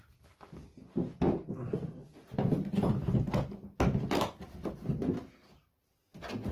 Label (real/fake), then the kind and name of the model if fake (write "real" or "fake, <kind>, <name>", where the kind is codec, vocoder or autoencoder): real